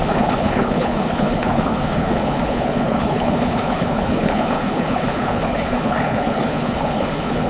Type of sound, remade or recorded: remade